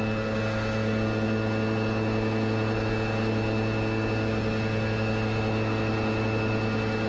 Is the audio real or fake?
real